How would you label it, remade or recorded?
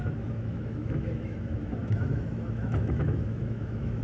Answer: remade